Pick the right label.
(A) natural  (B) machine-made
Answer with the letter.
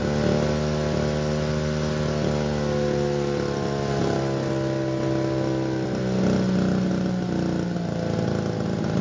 A